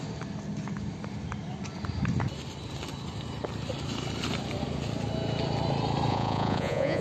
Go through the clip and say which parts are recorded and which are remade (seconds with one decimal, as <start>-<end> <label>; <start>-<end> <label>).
0.0-6.1 recorded; 6.1-7.0 remade